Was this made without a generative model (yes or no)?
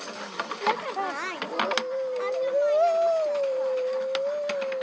yes